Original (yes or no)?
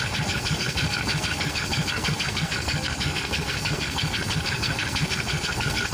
no